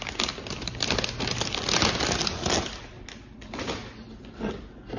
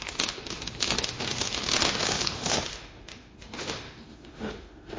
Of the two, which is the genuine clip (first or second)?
first